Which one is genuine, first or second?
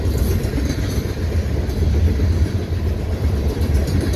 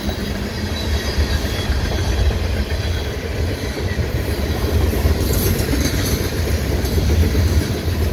first